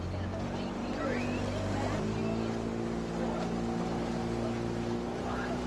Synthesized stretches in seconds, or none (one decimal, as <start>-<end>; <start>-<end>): none